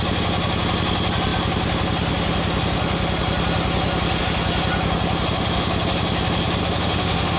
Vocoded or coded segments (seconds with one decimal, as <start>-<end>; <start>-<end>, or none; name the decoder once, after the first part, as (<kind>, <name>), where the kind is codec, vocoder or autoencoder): 6.6-7.4 (autoencoder, DAC-VAE)